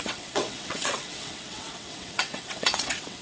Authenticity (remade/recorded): remade